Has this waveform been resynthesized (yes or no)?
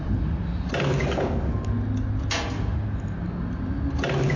no